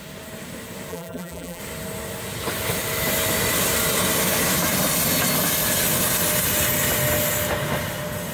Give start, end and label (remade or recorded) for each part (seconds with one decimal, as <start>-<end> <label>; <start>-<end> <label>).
0.0-0.9 recorded; 0.9-1.6 remade; 1.6-8.3 recorded